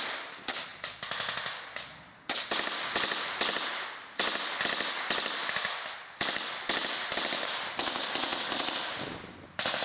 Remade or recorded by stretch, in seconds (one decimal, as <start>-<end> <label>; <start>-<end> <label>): 0.0-9.8 recorded